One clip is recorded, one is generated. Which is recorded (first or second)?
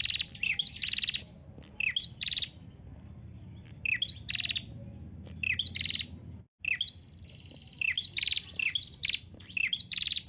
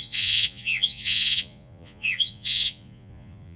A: first